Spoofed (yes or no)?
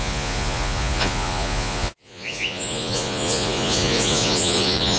yes